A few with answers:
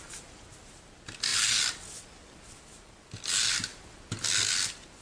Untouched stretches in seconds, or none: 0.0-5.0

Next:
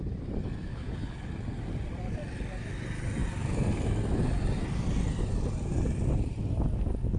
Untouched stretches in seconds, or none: 0.0-0.7; 1.3-7.2

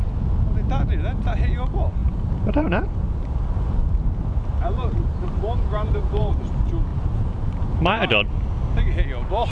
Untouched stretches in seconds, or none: 0.0-2.0; 6.3-6.9; 8.3-9.5

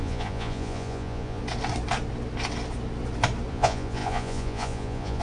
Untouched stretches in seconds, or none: 1.4-3.5

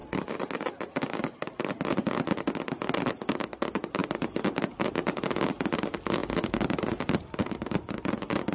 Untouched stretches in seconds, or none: 0.0-8.5

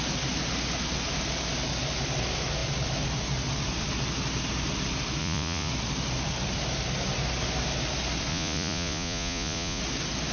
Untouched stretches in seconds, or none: 0.0-5.2; 5.7-8.3; 9.8-10.3

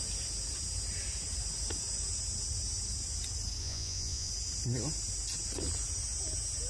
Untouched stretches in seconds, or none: 0.0-3.6; 4.3-6.7

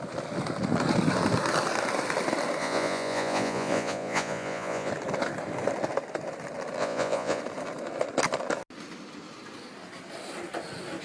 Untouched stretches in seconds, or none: 0.0-2.6; 4.9-6.8; 7.4-11.0